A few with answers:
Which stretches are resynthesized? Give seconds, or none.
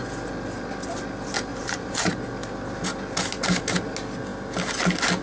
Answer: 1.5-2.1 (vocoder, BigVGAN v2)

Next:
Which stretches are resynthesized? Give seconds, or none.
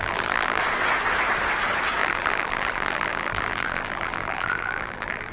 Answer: 0.0-0.6 (vocoder, BigVGAN v2); 2.0-5.3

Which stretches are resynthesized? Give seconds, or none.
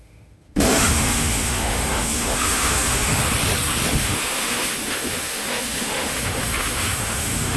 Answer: 0.0-3.1 (autoencoder, DAC-VAE); 3.9-7.6